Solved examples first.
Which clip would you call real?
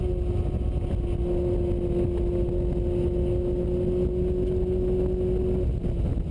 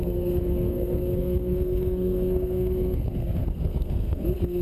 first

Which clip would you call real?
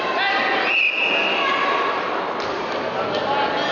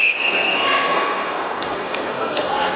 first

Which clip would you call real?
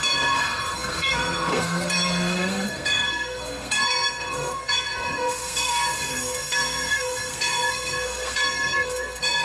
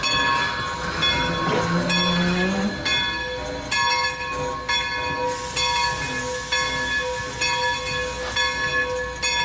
second